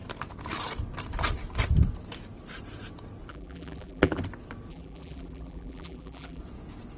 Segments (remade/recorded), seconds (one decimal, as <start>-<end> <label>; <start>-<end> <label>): 0.0-3.3 recorded; 3.3-4.2 remade; 4.2-4.7 recorded; 4.7-6.4 remade; 6.4-7.0 recorded

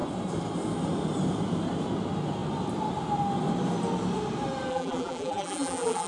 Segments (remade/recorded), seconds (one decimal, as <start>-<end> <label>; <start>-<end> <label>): 0.0-4.7 recorded; 4.7-6.1 remade

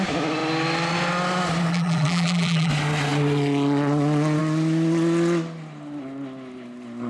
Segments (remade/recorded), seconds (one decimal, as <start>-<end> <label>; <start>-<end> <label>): 0.0-1.7 recorded; 1.7-2.7 remade; 2.7-7.1 recorded

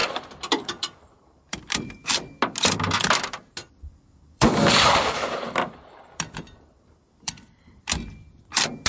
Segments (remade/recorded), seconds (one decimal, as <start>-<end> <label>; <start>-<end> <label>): 0.0-2.2 remade; 2.2-3.6 recorded; 3.6-7.9 remade; 7.9-8.9 recorded

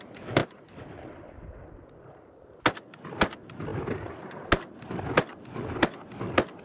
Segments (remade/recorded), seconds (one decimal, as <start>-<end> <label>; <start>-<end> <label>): 0.0-6.6 recorded

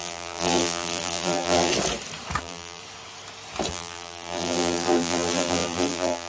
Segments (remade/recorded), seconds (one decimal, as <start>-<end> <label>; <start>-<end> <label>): 0.0-1.7 remade; 1.7-2.4 recorded; 2.4-2.8 remade; 2.8-3.7 recorded; 3.7-6.3 remade